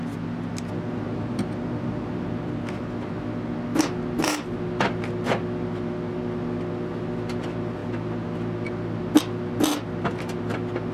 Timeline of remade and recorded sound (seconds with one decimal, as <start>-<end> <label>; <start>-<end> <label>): 0.0-10.9 recorded